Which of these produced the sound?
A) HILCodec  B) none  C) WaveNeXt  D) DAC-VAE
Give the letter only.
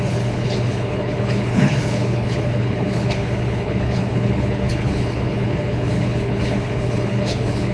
A